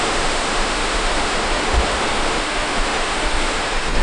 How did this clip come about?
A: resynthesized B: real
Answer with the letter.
A